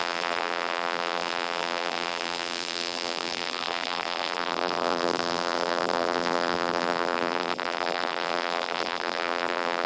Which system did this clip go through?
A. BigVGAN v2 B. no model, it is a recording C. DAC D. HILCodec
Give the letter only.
A